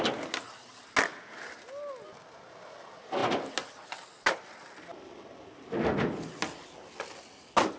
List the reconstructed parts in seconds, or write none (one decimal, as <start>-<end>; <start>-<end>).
none